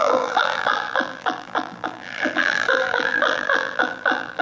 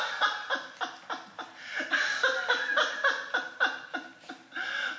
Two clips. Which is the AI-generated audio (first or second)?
first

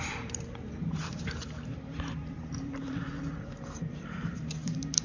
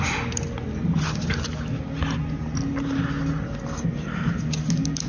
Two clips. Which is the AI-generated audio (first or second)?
first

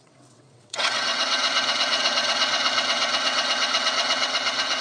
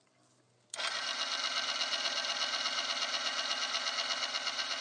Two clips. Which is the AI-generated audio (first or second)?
first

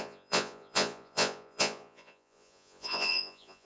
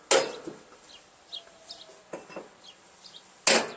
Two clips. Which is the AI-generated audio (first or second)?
first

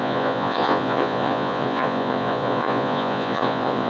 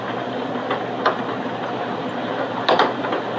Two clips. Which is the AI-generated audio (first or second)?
first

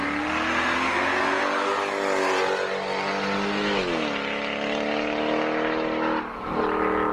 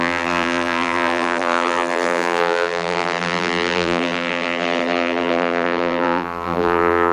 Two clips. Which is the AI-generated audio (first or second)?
second